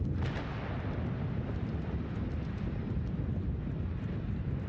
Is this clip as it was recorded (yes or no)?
yes